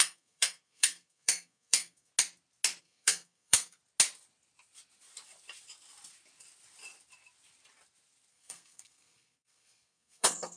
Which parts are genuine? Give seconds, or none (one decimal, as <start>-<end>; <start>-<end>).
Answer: 2.1-2.8; 3.8-8.3